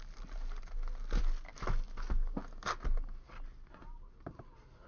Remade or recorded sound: recorded